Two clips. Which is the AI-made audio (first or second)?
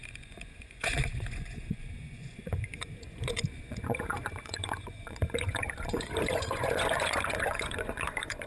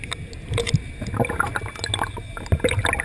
first